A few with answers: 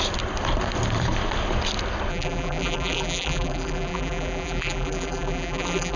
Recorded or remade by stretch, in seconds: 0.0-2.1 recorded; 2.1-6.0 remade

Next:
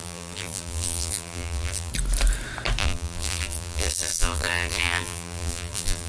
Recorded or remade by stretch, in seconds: 0.0-1.9 remade; 1.9-2.8 recorded; 2.8-6.1 remade

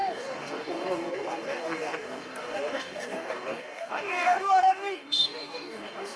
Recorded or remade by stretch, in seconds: 0.0-6.2 remade

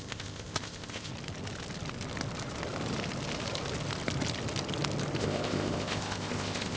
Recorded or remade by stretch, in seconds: 0.0-1.1 remade; 1.1-5.2 recorded; 5.2-6.8 remade

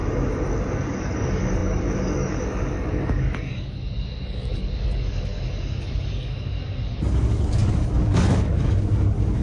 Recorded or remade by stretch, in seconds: 0.0-0.7 recorded; 0.7-9.4 remade

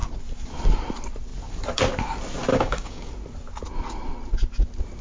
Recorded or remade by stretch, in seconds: 0.0-2.5 recorded; 2.5-3.1 remade; 3.1-5.0 recorded

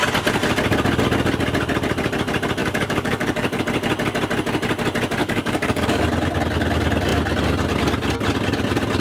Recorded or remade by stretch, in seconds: 0.0-2.6 recorded; 2.6-3.6 remade; 3.6-5.2 recorded; 5.2-6.0 remade; 6.0-9.0 recorded

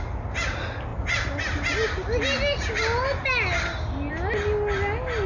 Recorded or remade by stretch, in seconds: 0.0-5.3 recorded